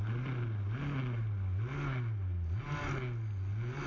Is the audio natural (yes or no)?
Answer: yes